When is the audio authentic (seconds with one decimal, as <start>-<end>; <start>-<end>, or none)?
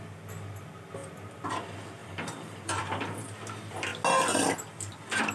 0.0-2.0; 2.8-5.3